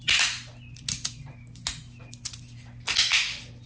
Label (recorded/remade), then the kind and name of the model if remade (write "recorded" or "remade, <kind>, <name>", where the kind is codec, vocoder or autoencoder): recorded